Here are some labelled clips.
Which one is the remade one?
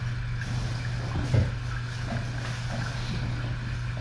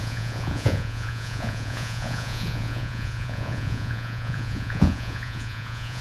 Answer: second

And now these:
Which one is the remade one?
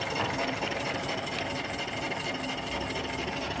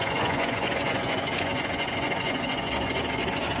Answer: second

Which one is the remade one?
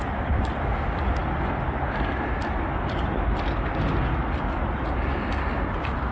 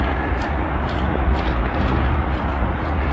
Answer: second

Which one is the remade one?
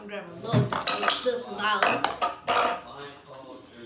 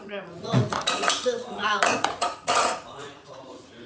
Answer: second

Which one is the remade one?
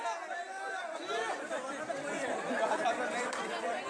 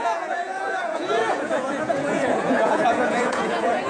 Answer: second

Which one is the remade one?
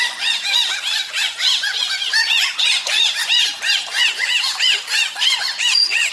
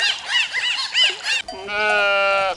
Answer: first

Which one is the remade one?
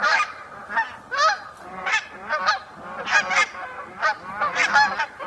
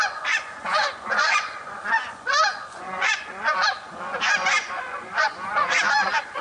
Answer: second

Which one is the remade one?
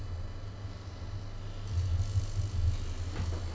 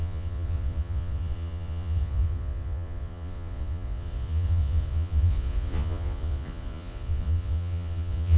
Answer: second